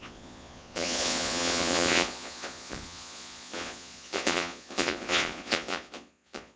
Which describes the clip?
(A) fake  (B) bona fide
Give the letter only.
A